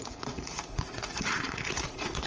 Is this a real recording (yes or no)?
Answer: no